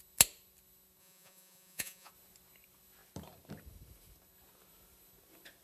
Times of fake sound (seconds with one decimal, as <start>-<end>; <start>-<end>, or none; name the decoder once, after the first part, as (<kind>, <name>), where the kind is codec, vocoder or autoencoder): 1.0-2.1 (vocoder, Vocos)